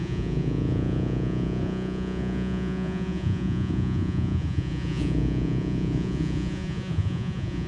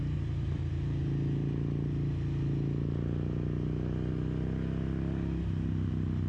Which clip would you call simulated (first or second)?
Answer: first